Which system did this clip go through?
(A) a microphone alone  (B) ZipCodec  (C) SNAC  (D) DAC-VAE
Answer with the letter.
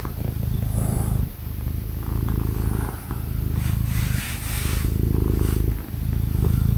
A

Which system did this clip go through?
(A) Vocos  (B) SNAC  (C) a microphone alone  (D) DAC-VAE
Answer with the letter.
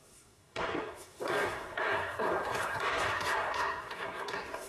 B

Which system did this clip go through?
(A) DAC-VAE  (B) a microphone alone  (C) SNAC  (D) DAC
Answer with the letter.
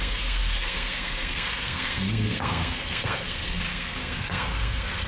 C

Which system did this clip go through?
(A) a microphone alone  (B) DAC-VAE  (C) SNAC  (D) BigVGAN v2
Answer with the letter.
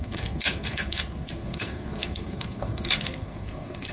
C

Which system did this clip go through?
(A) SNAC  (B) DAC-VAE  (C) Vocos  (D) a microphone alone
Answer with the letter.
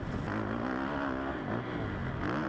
D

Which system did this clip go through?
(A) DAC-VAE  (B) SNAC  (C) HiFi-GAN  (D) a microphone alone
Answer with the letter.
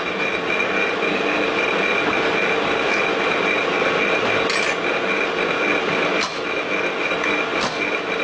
D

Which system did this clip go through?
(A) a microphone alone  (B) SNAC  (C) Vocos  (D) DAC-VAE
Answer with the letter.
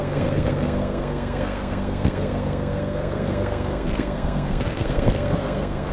B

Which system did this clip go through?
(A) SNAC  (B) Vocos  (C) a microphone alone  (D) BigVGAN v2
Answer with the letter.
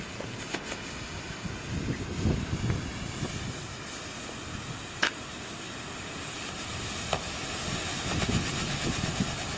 C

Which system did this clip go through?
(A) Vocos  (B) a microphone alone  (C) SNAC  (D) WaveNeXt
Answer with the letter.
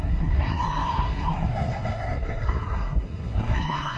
C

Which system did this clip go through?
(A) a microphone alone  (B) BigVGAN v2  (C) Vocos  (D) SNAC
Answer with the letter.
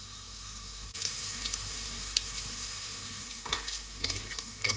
D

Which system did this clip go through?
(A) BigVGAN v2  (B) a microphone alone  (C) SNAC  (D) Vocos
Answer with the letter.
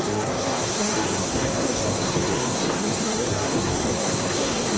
C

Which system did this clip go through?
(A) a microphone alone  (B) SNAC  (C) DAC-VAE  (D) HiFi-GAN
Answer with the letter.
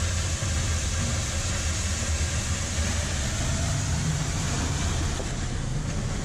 A